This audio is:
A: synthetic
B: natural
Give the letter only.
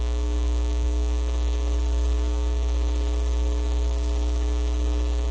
A